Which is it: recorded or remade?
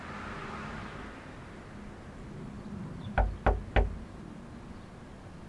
recorded